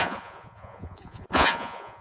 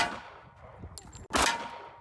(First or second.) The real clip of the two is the second